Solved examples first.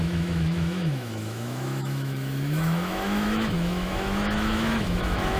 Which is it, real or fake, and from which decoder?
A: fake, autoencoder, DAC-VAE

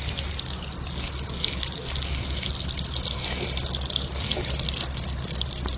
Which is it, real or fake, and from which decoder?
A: real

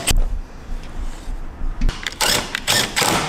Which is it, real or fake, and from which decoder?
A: fake, vocoder, BigVGAN v2